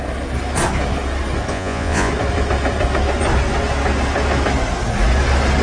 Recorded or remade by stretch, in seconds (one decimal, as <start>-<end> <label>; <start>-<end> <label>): 0.0-1.5 recorded; 1.5-2.1 remade; 2.1-5.6 recorded

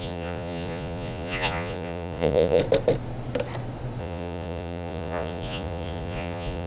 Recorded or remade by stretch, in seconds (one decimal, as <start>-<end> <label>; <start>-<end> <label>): 0.0-2.6 remade; 2.6-4.0 recorded; 4.0-6.7 remade